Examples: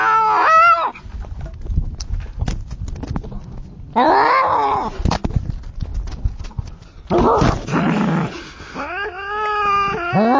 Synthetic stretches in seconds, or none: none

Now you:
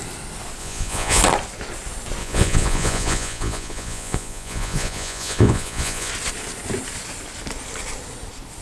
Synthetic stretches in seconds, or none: 0.6-1.2; 2.2-6.1

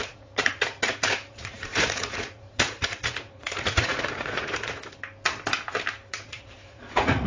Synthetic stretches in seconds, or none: 0.0-4.8; 6.1-7.3

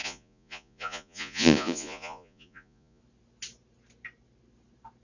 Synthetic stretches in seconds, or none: 0.0-3.0